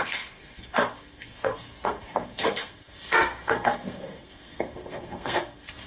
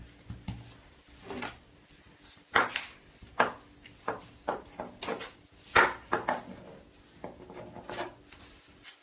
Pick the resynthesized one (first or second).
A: first